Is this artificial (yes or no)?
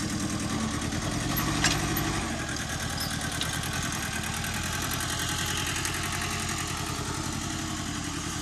no